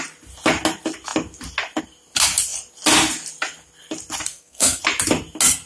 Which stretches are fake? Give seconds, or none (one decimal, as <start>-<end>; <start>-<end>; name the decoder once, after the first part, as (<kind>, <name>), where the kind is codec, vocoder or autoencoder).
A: 4.3-4.8 (codec, SNAC)